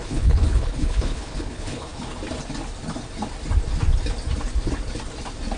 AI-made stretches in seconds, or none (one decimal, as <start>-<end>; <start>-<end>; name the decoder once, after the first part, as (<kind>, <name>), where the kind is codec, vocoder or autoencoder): 0.0-2.1 (codec, HILCodec)